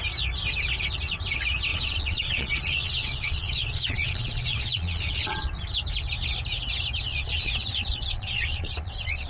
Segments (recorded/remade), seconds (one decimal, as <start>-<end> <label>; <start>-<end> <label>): 0.0-1.7 recorded; 1.7-5.6 remade; 5.6-7.1 recorded; 7.1-9.3 remade